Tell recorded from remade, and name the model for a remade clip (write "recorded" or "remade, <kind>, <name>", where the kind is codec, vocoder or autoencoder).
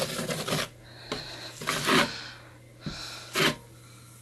recorded